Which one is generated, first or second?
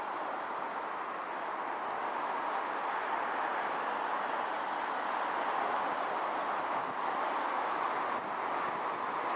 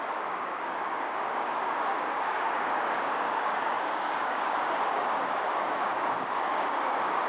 second